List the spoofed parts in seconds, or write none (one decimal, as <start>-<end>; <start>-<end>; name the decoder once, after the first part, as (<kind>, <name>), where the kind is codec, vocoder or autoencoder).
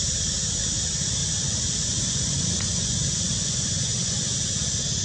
1.2-4.2 (vocoder, Vocos)